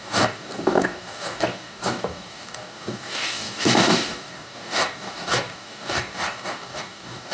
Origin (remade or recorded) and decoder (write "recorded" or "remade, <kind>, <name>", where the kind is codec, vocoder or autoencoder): remade, codec, DAC